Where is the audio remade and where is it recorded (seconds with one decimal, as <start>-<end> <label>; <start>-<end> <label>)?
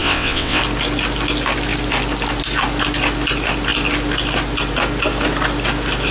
0.0-0.6 remade; 0.6-6.1 recorded